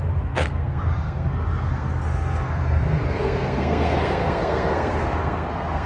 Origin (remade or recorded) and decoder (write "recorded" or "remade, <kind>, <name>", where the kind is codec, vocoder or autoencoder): remade, codec, SNAC